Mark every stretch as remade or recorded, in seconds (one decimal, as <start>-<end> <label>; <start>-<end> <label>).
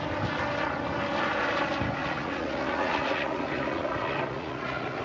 0.0-2.0 recorded; 2.0-5.0 remade